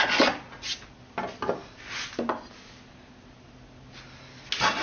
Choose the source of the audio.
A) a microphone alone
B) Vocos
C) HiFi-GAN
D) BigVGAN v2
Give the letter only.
A